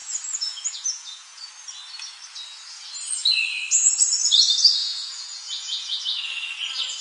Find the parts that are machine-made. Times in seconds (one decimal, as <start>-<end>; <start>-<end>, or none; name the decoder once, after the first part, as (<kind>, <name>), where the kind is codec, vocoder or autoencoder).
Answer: 0.0-1.5 (vocoder, Vocos); 4.8-6.0